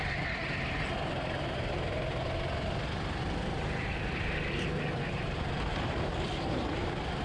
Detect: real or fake fake